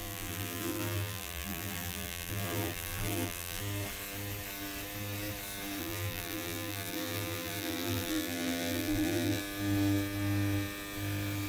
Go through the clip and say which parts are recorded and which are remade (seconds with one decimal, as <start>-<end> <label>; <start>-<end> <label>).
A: 0.0-3.6 remade; 3.6-5.8 recorded; 5.8-9.4 remade; 9.4-11.5 recorded

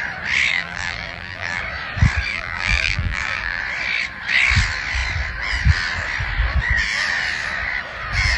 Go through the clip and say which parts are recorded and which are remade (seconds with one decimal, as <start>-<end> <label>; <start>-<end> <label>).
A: 0.0-0.5 recorded; 0.5-1.6 remade; 1.6-2.3 recorded; 2.3-3.6 remade; 3.6-8.4 recorded

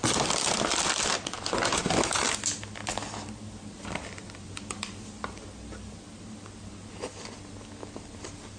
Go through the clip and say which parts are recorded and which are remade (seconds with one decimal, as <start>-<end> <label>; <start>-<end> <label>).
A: 0.0-8.6 recorded

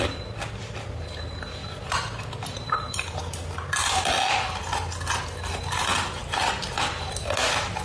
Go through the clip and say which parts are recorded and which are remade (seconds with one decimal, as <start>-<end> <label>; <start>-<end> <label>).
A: 0.0-1.6 recorded; 1.6-3.2 remade; 3.2-6.2 recorded; 6.2-7.2 remade; 7.2-7.8 recorded

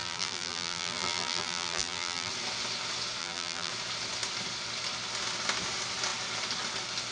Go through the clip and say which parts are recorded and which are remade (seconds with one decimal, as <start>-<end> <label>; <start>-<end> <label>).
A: 0.0-2.3 remade; 2.3-3.2 recorded; 3.2-3.7 remade; 3.7-7.1 recorded

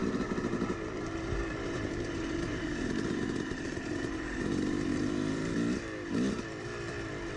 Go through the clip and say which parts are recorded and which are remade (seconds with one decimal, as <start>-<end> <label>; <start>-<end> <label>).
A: 0.0-4.4 remade; 4.4-4.9 recorded; 4.9-5.5 remade; 5.5-7.4 recorded

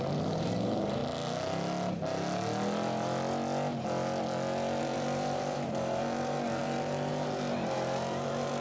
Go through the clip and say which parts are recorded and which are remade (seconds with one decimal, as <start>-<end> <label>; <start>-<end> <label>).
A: 0.0-1.0 remade; 1.0-4.8 recorded; 4.8-8.6 remade

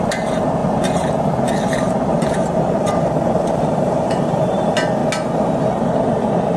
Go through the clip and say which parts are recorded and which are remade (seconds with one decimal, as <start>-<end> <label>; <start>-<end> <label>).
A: 0.0-0.6 remade; 0.6-1.2 recorded; 1.2-5.0 remade; 5.0-5.7 recorded; 5.7-6.6 remade